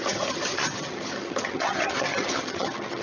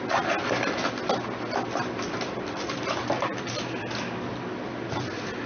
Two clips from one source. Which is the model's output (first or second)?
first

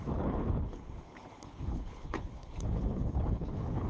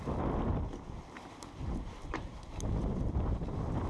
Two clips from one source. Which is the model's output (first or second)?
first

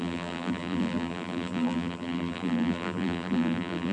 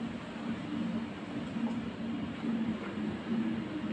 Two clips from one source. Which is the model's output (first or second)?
first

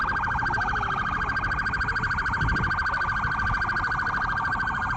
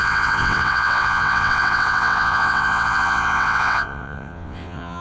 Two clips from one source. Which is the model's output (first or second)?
second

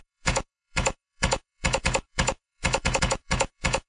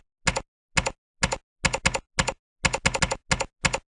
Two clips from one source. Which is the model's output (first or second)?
first